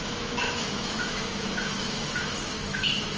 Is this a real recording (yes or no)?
no